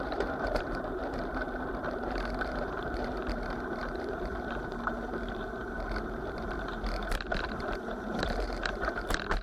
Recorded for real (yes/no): no